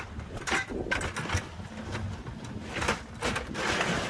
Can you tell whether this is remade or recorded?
recorded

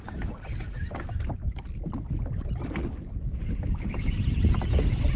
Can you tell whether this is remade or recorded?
recorded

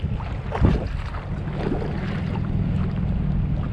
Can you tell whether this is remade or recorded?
recorded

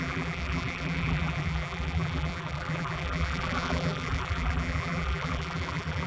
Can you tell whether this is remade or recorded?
remade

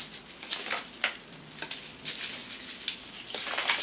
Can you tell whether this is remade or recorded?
recorded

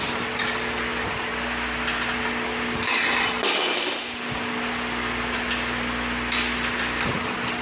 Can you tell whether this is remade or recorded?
recorded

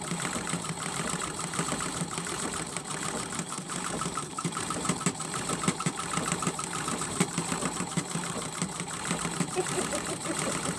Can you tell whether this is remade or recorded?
remade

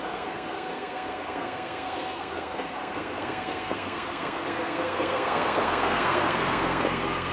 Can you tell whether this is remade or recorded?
remade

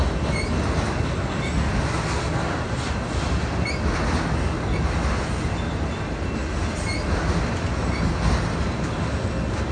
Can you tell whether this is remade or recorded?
recorded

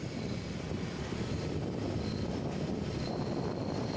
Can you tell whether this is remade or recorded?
recorded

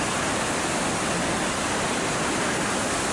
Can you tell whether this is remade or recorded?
recorded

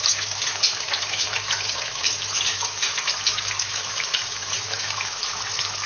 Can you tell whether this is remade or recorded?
remade